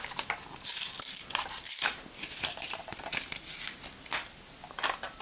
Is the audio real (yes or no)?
yes